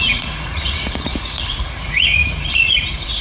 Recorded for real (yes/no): no